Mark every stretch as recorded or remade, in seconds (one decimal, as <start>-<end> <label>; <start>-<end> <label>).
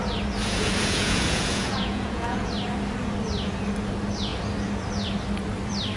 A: 0.0-0.4 recorded; 0.4-2.5 remade; 2.5-6.0 recorded